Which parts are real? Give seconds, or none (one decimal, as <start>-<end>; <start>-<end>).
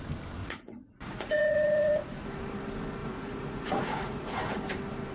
0.0-0.4; 1.9-3.0; 4.4-5.1